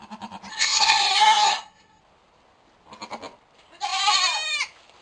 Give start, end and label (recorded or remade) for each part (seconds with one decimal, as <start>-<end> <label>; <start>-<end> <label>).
0.0-0.5 recorded; 0.5-2.0 remade; 2.0-5.0 recorded